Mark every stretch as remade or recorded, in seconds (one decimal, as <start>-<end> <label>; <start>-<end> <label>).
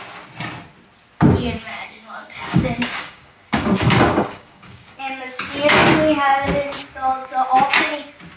0.0-1.7 recorded; 1.7-5.0 remade; 5.0-8.4 recorded